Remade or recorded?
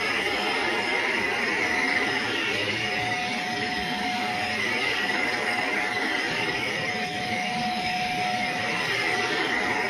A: remade